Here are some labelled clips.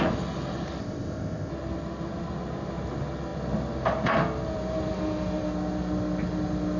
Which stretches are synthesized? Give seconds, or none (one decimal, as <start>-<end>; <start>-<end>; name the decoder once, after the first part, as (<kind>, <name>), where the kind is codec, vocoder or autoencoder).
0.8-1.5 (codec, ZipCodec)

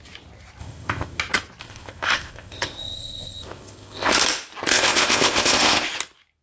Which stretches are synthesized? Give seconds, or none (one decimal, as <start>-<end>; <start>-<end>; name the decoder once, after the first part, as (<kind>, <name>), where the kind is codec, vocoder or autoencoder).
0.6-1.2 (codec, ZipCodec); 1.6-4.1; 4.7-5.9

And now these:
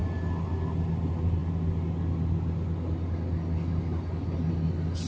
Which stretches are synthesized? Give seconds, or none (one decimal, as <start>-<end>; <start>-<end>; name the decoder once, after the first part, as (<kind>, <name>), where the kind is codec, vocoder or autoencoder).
none

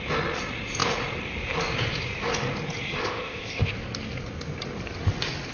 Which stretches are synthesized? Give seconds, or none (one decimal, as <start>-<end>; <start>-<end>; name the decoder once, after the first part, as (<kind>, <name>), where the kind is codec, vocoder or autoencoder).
3.0-3.7 (codec, ZipCodec)

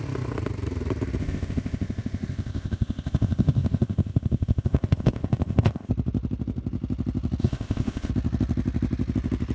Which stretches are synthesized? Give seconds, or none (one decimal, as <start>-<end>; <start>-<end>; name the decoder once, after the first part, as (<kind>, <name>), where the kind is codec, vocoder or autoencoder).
1.2-5.9 (codec, ZipCodec); 7.4-8.1